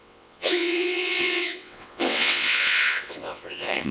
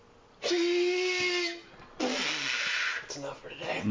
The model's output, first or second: first